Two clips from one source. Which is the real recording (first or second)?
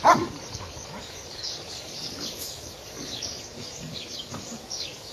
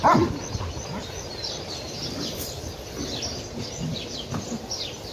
second